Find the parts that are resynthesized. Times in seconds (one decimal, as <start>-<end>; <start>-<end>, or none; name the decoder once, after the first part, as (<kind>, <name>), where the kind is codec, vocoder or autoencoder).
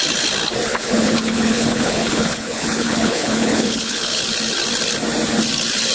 0.7-4.2 (codec, HILCodec)